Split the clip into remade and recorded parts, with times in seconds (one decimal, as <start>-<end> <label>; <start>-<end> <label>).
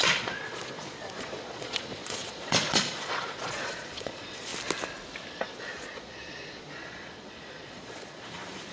0.0-4.5 remade; 4.5-5.3 recorded; 5.3-8.7 remade